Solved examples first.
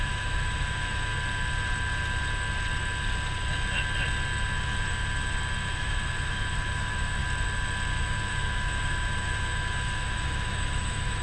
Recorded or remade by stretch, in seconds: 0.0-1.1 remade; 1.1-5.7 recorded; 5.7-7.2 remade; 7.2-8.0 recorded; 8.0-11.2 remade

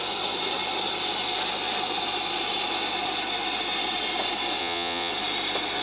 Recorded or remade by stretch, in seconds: 0.0-4.6 recorded; 4.6-5.1 remade; 5.1-5.8 recorded

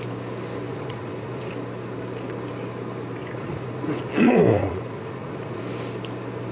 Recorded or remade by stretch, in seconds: 0.0-0.7 recorded; 0.7-1.5 remade; 1.5-3.2 recorded; 3.2-4.1 remade; 4.1-4.6 recorded; 4.6-5.6 remade; 5.6-6.5 recorded

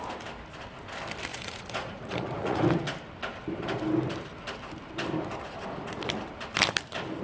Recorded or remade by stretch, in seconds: 0.0-1.3 recorded; 1.3-2.6 remade; 2.6-7.2 recorded

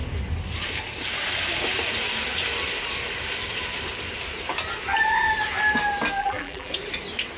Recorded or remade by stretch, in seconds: 0.0-6.2 recorded; 6.2-6.7 remade; 6.7-7.4 recorded

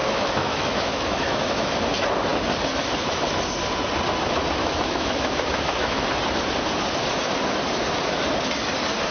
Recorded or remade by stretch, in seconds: 0.0-1.7 remade; 1.7-4.6 recorded; 4.6-6.0 remade; 6.0-9.1 recorded

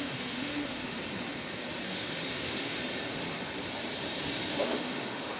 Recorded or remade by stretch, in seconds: 0.0-1.0 remade; 1.0-1.9 recorded; 1.9-2.8 remade; 2.8-4.5 recorded; 4.5-5.4 remade